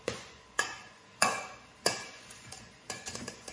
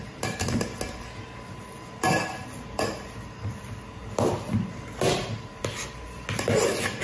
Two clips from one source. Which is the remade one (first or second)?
first